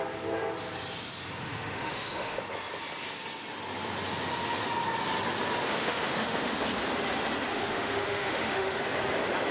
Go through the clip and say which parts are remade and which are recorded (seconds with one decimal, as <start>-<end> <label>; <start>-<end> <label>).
0.0-1.4 recorded; 1.4-2.4 remade; 2.4-5.7 recorded; 5.7-6.5 remade; 6.5-7.5 recorded; 7.5-8.8 remade; 8.8-9.5 recorded